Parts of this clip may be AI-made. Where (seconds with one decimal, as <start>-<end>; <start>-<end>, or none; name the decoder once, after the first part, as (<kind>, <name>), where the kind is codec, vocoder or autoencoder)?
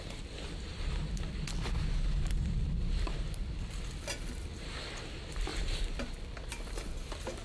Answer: none